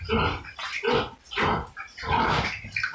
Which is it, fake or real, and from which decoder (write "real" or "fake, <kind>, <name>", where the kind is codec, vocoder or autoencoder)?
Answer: real